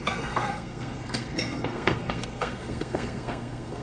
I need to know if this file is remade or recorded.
remade